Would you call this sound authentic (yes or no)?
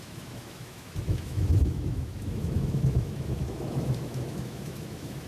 no